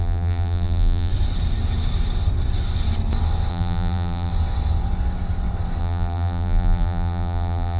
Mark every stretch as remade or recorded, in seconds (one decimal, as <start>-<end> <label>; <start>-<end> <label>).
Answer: 0.0-1.1 remade; 1.1-3.5 recorded; 3.5-4.3 remade; 4.3-5.8 recorded; 5.8-7.8 remade